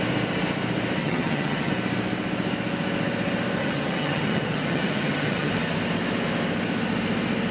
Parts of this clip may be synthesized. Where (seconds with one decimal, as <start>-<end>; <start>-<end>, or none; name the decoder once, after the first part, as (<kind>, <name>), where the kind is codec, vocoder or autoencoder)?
1.0-1.7 (vocoder, HiFi-GAN); 3.6-5.5

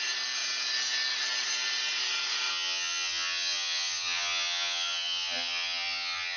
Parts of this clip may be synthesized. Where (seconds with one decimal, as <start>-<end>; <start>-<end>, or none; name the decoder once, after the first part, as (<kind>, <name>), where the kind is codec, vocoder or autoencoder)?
2.5-6.4 (vocoder, HiFi-GAN)

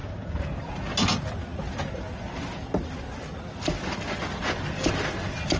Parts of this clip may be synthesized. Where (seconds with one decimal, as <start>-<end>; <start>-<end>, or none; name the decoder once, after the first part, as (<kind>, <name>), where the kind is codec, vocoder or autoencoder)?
none

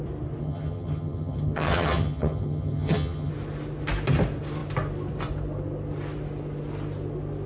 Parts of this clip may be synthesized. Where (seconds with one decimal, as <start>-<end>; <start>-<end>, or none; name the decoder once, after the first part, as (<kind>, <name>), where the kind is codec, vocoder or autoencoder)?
0.4-3.3 (vocoder, HiFi-GAN)